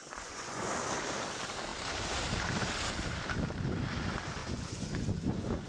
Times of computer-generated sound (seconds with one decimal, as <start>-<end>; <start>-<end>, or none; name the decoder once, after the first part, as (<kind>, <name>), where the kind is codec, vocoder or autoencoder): 0.0-0.7 (vocoder, Vocos); 4.4-5.7